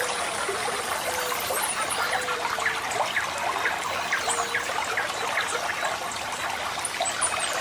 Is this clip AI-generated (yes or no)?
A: no